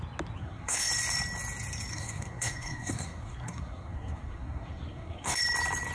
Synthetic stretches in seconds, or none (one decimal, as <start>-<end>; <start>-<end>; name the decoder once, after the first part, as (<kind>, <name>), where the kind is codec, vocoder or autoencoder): 0.4-0.9 (codec, SNAC); 1.9-5.4